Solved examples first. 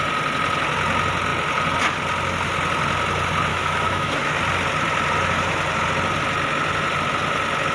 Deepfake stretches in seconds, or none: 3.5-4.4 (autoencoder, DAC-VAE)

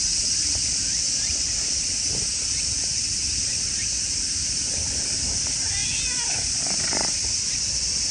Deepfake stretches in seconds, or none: none

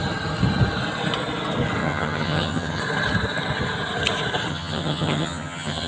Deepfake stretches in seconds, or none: 1.8-2.8 (vocoder, HiFi-GAN); 4.5-5.9

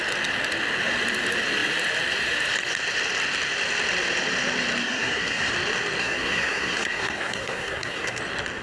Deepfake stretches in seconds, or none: 4.8-5.5 (codec, SNAC); 6.0-8.2

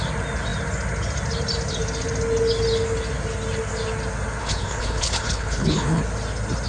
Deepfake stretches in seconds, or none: 4.4-6.0 (codec, HILCodec)